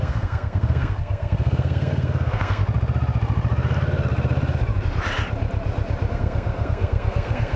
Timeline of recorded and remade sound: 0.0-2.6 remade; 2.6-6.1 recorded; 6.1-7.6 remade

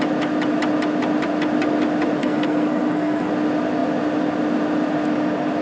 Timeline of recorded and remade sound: 0.0-2.2 recorded; 2.2-3.3 remade; 3.3-5.6 recorded